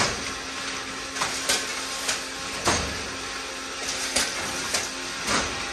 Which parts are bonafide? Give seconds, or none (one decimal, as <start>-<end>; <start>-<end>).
0.0-5.7